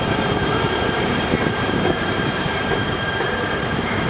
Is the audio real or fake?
fake